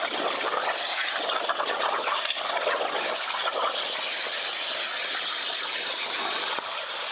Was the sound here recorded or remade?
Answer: recorded